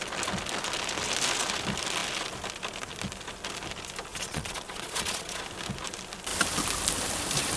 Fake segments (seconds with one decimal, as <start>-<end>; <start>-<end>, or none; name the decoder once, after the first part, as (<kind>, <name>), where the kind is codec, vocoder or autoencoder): 4.1-5.4 (vocoder, Vocos)